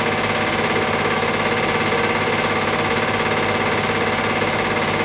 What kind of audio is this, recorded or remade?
recorded